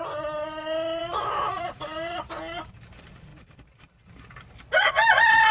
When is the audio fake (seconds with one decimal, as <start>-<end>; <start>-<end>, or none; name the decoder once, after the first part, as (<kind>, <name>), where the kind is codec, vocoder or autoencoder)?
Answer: 1.0-2.4 (vocoder, BigVGAN v2)